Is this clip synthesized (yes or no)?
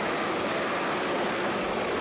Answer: no